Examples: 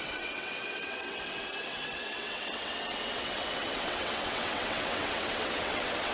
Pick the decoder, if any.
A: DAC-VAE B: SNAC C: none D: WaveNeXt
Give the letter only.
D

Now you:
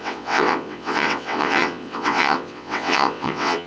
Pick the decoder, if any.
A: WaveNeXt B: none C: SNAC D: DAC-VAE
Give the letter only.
A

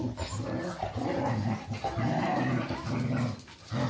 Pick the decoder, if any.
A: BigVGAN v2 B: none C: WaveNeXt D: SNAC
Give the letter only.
B